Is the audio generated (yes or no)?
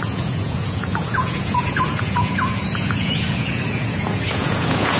yes